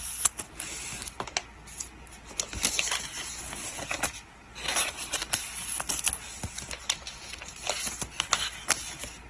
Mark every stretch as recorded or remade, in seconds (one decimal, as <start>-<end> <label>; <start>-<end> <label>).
0.0-9.3 recorded